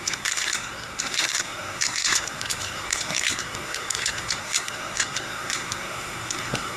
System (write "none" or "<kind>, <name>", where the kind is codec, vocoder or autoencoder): codec, SNAC